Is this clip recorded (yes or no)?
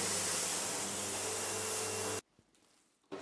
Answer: yes